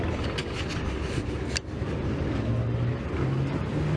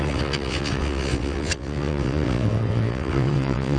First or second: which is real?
first